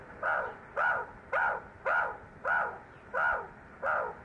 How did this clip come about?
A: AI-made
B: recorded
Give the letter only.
B